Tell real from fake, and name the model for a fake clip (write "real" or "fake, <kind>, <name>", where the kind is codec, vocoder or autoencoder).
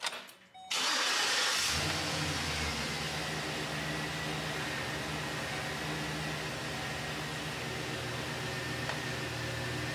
real